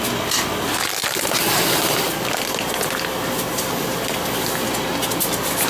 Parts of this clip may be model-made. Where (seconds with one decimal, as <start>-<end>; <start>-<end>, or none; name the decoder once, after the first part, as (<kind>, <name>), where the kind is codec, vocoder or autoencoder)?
1.0-3.7 (vocoder, BigVGAN v2)